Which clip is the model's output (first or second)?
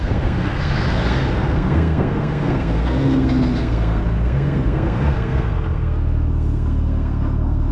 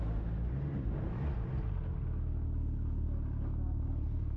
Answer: first